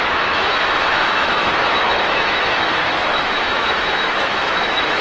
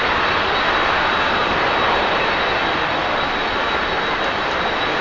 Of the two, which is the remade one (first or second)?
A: first